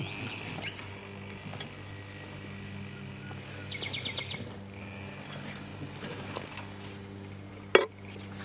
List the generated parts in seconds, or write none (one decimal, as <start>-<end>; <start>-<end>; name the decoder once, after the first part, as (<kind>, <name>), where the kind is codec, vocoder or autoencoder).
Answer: none